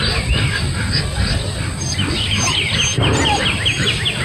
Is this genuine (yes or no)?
yes